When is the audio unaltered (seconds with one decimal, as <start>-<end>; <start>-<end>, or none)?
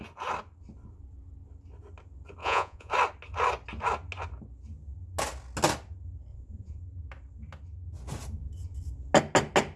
0.0-2.4; 2.9-6.3; 6.8-9.8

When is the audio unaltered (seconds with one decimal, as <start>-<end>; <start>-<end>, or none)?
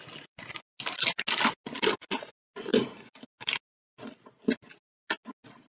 0.0-5.7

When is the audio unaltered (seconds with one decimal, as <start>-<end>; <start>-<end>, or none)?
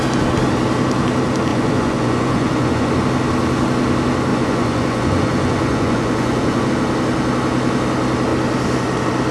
0.0-1.5; 2.9-4.3; 6.7-9.3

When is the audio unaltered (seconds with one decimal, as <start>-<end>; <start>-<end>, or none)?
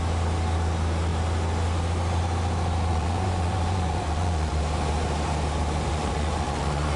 0.0-2.9; 4.6-5.9